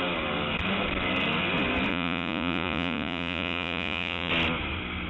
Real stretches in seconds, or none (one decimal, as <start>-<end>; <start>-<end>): 0.0-1.9; 4.3-5.1